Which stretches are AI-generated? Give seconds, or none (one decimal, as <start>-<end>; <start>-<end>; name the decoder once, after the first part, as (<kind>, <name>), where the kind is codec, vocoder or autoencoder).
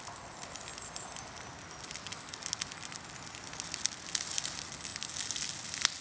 none